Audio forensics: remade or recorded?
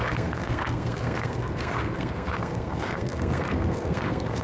remade